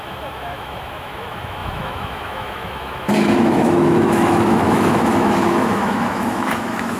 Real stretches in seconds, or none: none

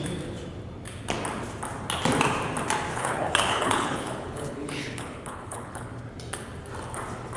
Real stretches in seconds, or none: 0.0-2.9; 5.9-7.4

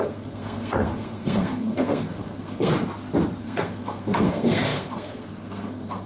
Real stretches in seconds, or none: 2.7-3.4

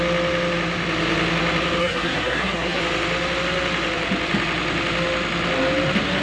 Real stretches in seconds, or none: 0.0-1.8; 2.8-6.2

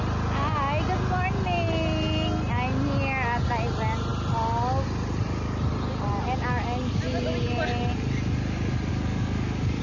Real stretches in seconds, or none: 0.0-8.9

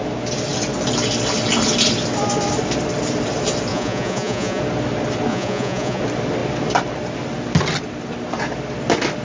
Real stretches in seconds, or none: 0.0-3.7; 4.6-5.3; 6.0-9.2

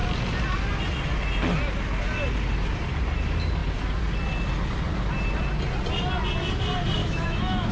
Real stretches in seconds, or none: 0.0-7.0

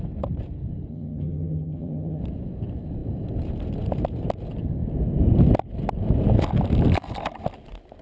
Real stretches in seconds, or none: 0.0-0.9; 2.2-8.0